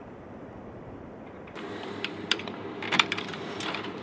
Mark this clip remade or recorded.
remade